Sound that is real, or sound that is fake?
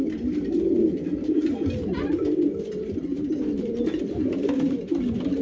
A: real